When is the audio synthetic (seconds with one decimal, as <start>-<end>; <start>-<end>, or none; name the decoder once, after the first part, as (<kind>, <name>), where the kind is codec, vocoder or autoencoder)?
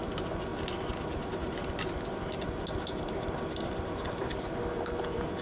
none